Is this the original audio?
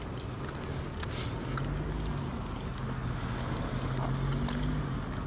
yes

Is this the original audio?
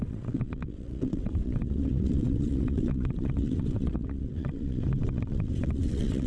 no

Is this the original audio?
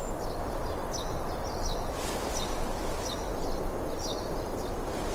yes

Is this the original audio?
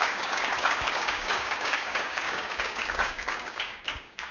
no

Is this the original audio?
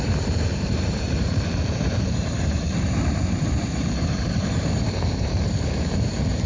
no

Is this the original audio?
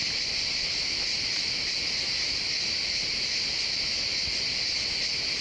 yes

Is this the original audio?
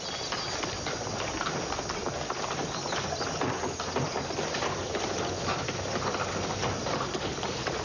yes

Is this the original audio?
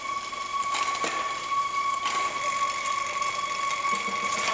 yes